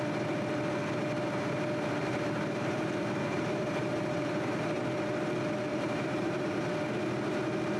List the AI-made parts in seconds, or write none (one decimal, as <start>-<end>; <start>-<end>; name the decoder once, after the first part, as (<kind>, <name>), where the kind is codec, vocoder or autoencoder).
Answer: 2.0-4.8 (vocoder, BigVGAN v2); 5.7-6.7